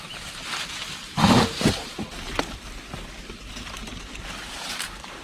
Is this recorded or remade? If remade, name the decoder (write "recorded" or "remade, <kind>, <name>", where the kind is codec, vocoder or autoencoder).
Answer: remade, vocoder, BigVGAN v2